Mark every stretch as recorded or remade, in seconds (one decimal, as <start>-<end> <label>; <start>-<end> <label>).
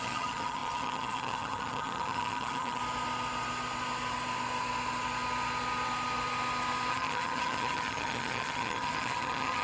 0.0-2.8 remade; 2.8-6.9 recorded; 6.9-9.6 remade